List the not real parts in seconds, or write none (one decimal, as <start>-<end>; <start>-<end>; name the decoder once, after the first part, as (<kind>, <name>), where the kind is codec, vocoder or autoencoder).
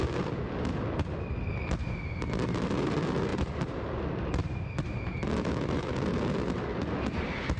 none